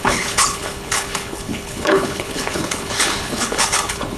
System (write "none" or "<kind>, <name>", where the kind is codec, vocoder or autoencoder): codec, HILCodec